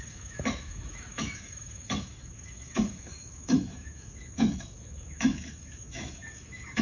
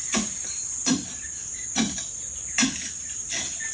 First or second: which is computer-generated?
first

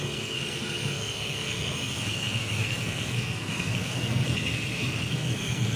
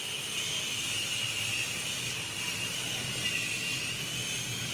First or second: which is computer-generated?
first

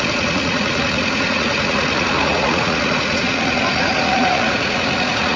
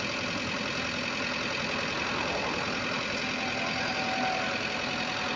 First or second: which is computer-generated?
first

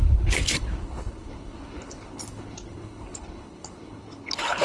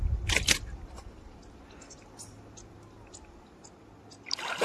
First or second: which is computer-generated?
first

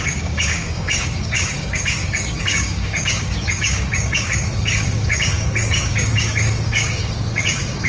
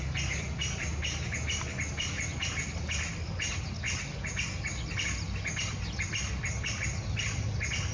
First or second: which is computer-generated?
first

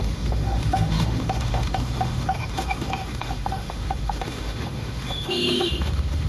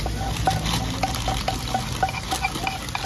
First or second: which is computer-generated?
first